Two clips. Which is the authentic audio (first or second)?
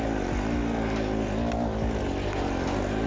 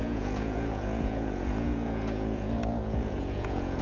first